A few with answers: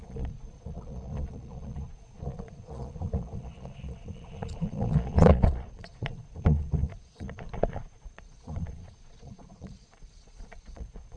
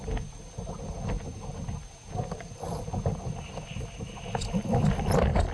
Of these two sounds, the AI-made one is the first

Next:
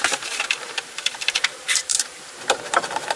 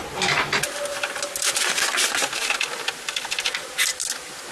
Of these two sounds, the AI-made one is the first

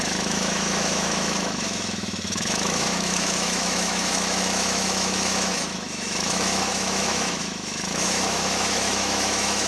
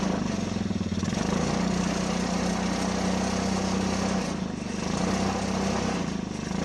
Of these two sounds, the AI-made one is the first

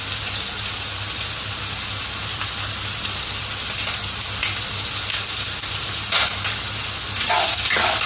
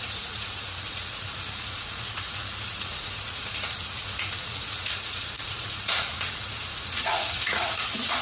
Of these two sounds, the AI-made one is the second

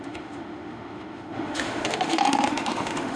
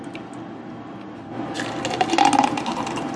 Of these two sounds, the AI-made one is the first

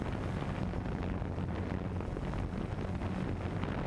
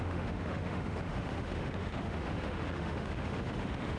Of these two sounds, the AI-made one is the second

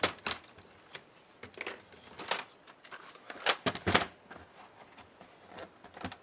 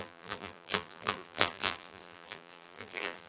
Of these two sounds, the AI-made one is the second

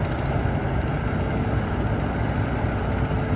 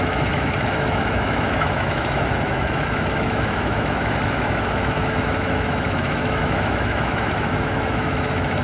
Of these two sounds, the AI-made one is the second